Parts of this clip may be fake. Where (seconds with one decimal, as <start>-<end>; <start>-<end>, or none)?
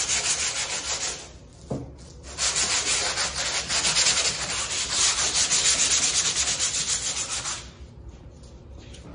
none